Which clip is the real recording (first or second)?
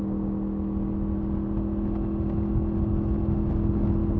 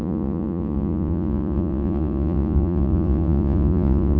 first